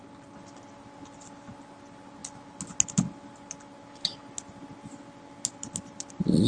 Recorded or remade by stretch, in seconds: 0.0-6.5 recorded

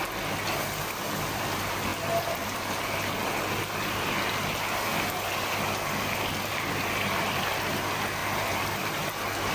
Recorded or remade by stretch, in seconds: 0.0-1.9 recorded; 1.9-2.4 remade; 2.4-8.2 recorded; 8.2-8.9 remade; 8.9-9.5 recorded